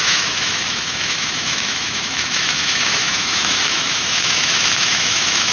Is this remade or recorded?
remade